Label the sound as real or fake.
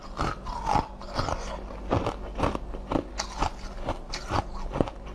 real